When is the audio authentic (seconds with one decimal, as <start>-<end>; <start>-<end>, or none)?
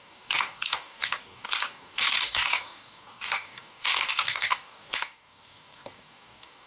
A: none